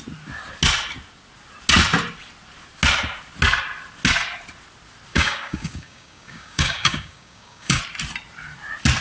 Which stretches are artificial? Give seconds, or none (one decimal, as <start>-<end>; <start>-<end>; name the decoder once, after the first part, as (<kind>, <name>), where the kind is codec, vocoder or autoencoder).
5.1-7.8 (codec, DAC)